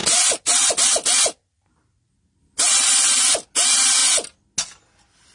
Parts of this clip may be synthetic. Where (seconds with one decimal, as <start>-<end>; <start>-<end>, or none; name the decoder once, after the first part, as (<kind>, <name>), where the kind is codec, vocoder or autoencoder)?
none